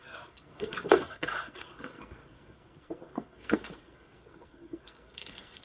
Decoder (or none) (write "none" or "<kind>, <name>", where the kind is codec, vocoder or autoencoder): codec, SNAC